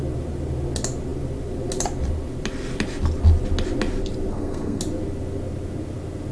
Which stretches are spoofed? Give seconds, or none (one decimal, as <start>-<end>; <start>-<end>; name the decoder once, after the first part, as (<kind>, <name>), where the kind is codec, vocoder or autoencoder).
4.3-4.8 (codec, SNAC)